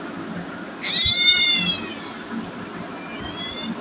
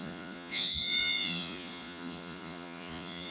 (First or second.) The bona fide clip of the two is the first